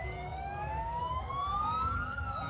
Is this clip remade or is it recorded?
remade